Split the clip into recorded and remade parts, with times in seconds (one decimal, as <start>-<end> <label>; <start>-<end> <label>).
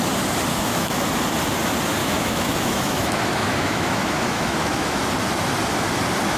0.0-0.5 recorded; 0.5-1.0 remade; 1.0-2.0 recorded; 2.0-5.0 remade; 5.0-6.4 recorded